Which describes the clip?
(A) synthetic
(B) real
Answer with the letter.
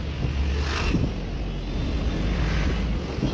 B